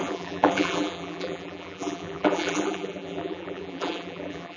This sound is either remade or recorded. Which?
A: remade